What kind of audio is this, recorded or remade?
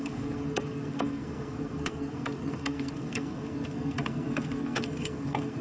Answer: remade